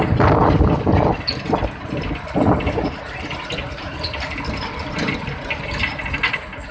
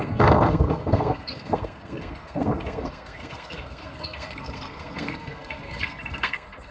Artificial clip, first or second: second